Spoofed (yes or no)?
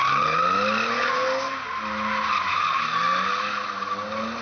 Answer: no